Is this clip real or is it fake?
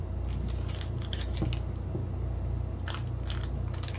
real